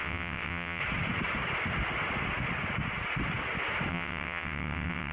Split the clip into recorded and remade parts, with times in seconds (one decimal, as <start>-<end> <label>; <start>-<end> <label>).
0.0-0.8 remade; 0.8-3.9 recorded; 3.9-5.1 remade